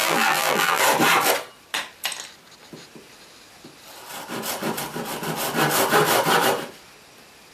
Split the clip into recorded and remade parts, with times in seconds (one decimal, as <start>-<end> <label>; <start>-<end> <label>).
0.0-0.8 remade; 0.8-7.5 recorded